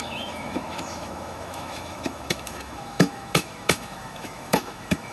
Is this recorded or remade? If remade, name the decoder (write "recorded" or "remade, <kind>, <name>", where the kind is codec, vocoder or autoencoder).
remade, autoencoder, DAC-VAE